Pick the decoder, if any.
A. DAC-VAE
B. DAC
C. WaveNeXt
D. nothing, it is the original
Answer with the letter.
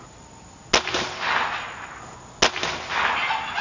D